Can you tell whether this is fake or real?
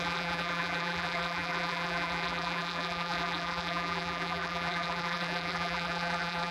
fake